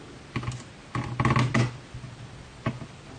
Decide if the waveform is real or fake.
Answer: real